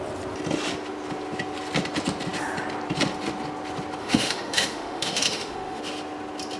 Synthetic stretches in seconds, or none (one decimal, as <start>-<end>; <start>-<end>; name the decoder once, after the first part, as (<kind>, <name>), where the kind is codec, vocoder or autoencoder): 4.0-5.8 (autoencoder, DAC-VAE)